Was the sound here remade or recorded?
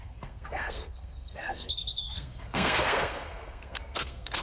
remade